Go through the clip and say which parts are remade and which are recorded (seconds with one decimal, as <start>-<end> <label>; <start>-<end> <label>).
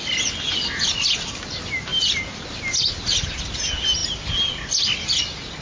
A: 0.0-5.6 recorded